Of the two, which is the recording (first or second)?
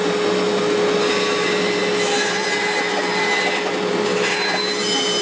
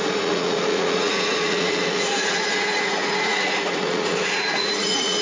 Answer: first